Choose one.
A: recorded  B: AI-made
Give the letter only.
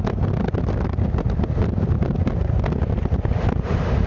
A